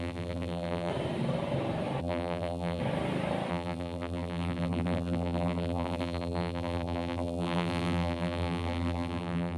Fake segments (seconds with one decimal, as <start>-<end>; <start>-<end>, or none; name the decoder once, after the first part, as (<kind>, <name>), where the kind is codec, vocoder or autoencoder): 0.0-0.9 (vocoder, BigVGAN v2); 2.0-2.8; 3.5-9.6